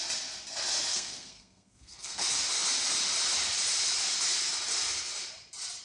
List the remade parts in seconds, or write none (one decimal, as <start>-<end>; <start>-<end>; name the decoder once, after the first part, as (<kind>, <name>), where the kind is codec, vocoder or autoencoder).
0.9-2.2 (codec, SNAC)